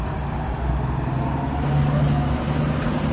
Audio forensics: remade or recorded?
recorded